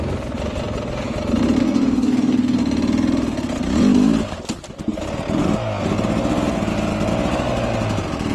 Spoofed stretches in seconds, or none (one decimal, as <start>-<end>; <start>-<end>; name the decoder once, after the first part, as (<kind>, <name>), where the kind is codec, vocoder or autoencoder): 1.6-2.6 (codec, DAC)